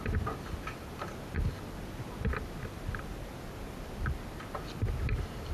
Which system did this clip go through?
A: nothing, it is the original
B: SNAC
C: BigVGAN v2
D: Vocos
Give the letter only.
A